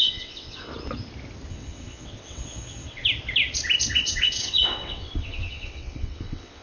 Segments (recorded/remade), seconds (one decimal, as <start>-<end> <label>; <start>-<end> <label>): 0.0-0.7 remade; 0.7-1.5 recorded; 1.5-3.0 remade; 3.0-3.9 recorded; 3.9-6.6 remade